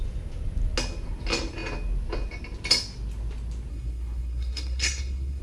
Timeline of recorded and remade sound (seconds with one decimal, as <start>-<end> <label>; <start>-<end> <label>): 0.0-3.7 recorded; 3.7-5.4 remade

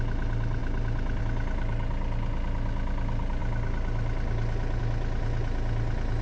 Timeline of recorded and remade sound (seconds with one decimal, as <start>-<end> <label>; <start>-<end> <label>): 0.0-6.2 recorded

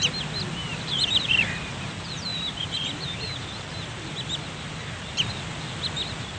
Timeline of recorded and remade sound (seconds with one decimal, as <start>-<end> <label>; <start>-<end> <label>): 0.0-0.7 recorded; 0.7-1.3 remade; 1.3-2.3 recorded; 2.3-4.1 remade; 4.1-6.4 recorded